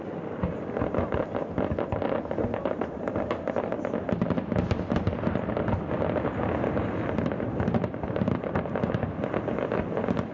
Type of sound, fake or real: real